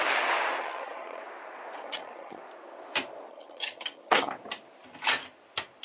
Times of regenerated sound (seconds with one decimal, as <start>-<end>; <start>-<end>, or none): 0.6-1.2; 1.8-2.4; 3.3-4.3

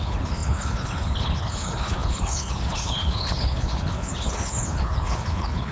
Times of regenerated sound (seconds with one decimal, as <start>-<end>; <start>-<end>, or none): 0.0-5.7

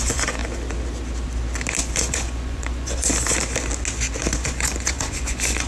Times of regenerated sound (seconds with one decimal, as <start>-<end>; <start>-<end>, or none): 0.0-0.4; 1.8-3.1; 4.2-5.7